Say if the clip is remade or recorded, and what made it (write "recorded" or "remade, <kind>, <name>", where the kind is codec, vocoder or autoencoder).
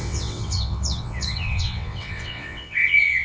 remade, vocoder, WaveNeXt